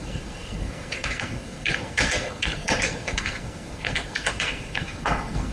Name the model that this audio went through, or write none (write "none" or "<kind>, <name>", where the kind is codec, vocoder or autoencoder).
codec, SNAC